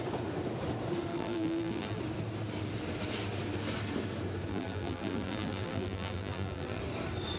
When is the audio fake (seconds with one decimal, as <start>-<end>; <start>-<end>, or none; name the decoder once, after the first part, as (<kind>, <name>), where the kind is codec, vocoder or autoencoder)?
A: 1.1-2.0 (vocoder, BigVGAN v2); 4.5-6.8